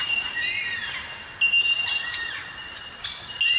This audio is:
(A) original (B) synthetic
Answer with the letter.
A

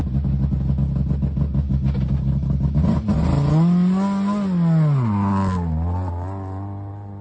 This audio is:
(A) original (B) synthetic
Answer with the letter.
A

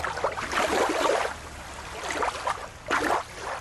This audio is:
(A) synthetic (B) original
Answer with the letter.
B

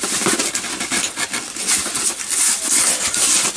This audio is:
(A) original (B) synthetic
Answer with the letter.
A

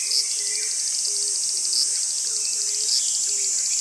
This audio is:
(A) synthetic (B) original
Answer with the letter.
B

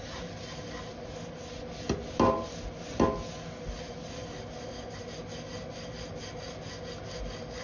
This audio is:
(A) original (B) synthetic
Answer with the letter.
A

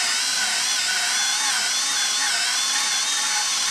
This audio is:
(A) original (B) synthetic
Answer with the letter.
A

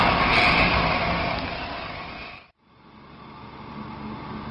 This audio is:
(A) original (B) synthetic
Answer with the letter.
A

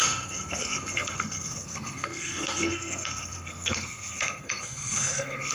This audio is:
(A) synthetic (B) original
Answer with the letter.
A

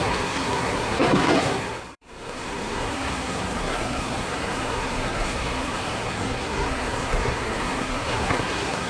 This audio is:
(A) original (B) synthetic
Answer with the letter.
B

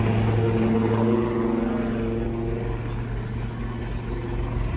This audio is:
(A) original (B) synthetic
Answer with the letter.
A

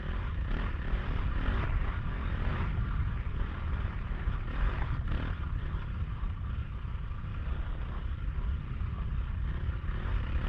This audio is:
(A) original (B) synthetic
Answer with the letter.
A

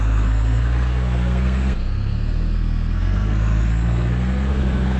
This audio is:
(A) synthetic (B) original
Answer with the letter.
A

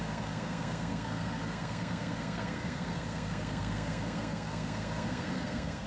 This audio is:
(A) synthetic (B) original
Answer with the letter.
A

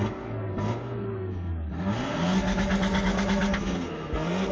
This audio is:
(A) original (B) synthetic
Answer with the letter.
B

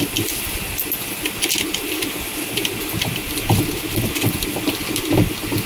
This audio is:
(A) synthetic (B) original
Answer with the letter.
B